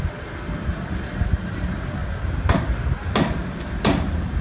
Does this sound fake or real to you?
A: real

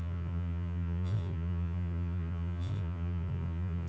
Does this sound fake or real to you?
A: fake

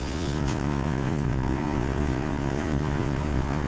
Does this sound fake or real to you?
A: fake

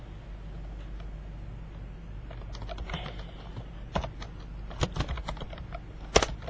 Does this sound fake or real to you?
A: real